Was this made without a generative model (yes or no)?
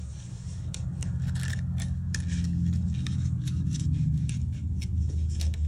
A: no